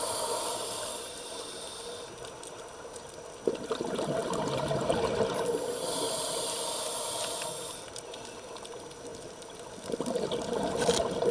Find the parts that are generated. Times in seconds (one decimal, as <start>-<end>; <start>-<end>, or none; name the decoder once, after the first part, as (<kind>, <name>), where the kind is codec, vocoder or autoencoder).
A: 9.1-10.8 (vocoder, BigVGAN v2)